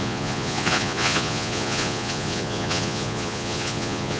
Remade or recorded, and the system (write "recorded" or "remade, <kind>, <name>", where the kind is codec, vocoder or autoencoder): remade, vocoder, Vocos